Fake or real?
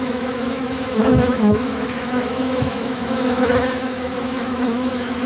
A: fake